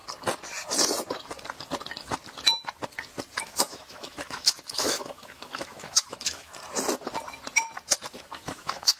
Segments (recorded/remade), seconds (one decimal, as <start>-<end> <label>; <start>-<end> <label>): 0.0-3.4 recorded; 3.4-6.5 remade; 6.5-8.1 recorded; 8.1-9.0 remade